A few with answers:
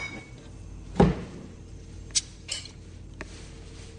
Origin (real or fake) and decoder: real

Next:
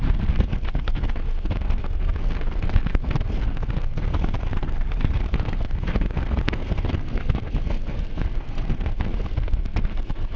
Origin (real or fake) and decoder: fake, codec, SNAC